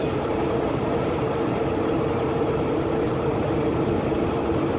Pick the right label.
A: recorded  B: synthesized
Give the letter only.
B